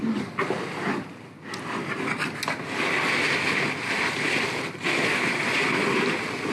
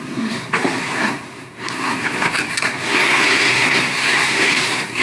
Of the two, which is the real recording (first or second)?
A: first